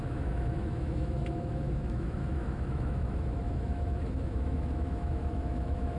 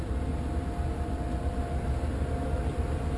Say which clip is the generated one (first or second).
first